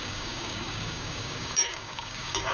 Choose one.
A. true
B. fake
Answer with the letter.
B